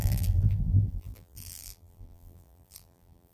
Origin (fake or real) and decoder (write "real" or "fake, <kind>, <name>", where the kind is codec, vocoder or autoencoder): fake, vocoder, BigVGAN v2